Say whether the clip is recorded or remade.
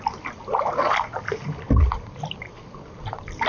recorded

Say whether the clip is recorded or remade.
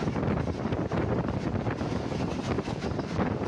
recorded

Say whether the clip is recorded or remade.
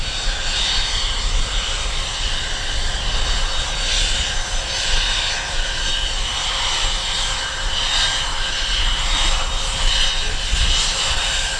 recorded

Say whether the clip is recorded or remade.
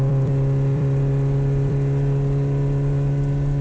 remade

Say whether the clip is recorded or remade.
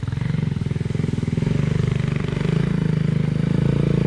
recorded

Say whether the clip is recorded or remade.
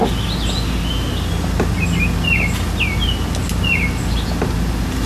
recorded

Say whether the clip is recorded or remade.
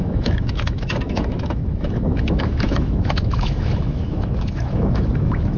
remade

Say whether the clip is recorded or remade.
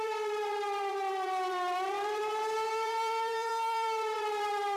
remade